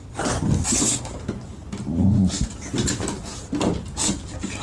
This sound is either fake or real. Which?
real